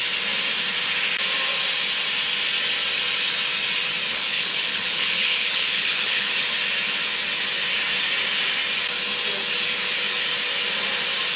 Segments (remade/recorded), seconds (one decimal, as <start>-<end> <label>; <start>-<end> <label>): 0.0-4.1 recorded; 4.1-6.3 remade; 6.3-11.4 recorded